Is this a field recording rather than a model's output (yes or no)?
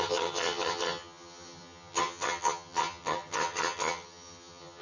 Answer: no